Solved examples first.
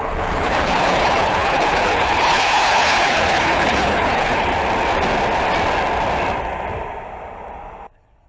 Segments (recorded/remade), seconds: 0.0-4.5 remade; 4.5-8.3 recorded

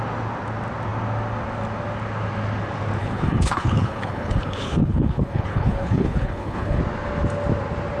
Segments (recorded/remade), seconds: 0.0-3.0 recorded; 3.0-6.8 remade; 6.8-8.0 recorded

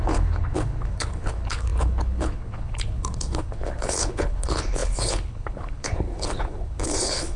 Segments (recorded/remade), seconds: 0.0-7.4 remade

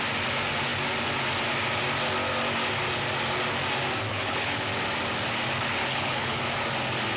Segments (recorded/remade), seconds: 0.0-4.1 recorded; 4.1-4.7 remade; 4.7-5.8 recorded; 5.8-6.4 remade; 6.4-7.2 recorded